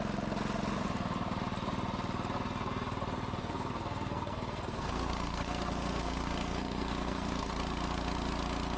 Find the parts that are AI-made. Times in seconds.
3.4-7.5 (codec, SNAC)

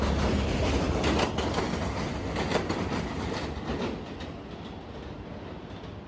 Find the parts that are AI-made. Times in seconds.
none

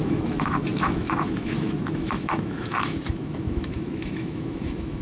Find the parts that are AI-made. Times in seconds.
0.0-5.0 (autoencoder, DAC-VAE)